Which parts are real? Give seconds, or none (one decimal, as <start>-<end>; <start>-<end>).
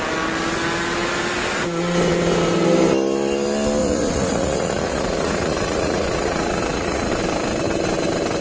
0.0-3.8; 7.1-8.4